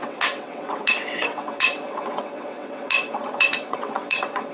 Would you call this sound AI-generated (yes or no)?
yes